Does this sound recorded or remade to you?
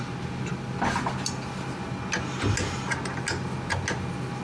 recorded